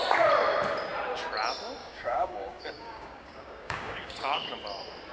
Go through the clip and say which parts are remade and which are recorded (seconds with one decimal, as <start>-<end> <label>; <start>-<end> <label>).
0.0-1.8 recorded; 1.8-4.5 remade; 4.5-5.1 recorded

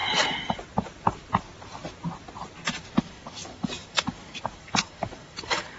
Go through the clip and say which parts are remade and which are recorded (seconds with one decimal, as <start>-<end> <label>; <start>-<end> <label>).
0.0-3.0 recorded; 3.0-5.8 remade

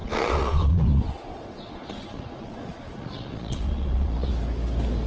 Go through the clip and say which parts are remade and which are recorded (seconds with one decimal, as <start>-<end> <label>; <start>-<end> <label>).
0.0-4.3 remade; 4.3-5.1 recorded

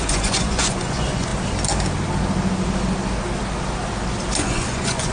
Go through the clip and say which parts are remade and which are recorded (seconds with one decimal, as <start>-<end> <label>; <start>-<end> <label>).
0.0-1.3 remade; 1.3-4.4 recorded; 4.4-5.1 remade

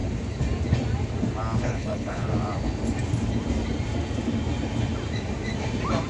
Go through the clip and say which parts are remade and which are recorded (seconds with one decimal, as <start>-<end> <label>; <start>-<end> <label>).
0.0-1.6 recorded; 1.6-2.3 remade; 2.3-6.1 recorded

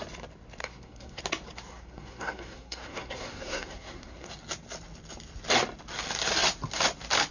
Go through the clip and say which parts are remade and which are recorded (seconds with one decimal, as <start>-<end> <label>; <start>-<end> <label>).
0.0-0.6 recorded; 0.6-1.2 remade; 1.2-1.7 recorded; 1.7-4.3 remade; 4.3-7.3 recorded